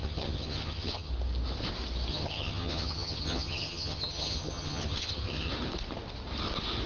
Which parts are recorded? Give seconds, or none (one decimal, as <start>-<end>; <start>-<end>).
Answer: 1.1-2.1; 5.5-6.9